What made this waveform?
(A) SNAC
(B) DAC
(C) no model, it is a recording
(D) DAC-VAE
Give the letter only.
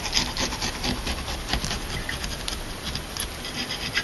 C